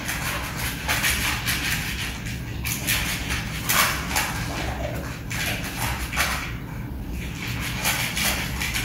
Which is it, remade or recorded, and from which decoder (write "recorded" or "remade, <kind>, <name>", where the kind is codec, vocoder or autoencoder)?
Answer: recorded